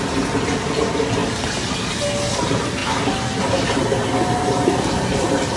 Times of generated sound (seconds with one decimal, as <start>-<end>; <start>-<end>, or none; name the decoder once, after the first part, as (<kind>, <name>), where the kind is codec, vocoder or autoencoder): 0.0-1.2 (vocoder, BigVGAN v2); 2.3-2.8; 4.3-5.6